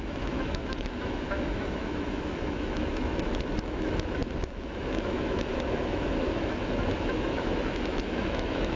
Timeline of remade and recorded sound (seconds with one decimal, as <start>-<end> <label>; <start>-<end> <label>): 0.0-8.8 remade